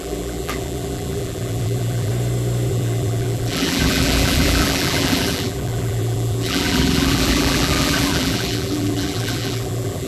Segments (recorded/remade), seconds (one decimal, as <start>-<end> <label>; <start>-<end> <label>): 0.0-2.1 remade; 2.1-2.7 recorded; 2.7-10.1 remade